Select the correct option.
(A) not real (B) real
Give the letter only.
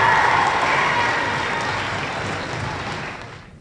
B